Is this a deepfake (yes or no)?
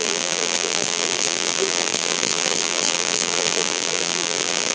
yes